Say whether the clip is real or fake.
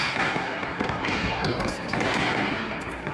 fake